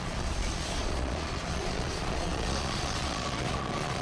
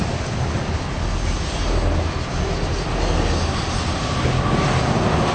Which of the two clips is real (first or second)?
second